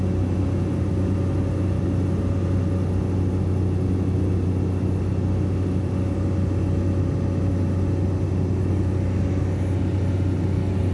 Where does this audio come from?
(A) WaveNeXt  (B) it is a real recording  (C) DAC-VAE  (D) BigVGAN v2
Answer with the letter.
B